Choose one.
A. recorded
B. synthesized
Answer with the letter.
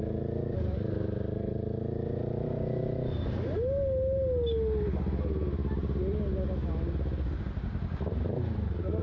A